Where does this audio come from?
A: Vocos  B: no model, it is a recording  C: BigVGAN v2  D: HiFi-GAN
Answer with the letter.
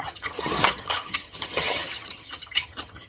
D